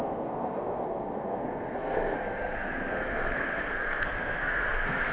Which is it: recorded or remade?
remade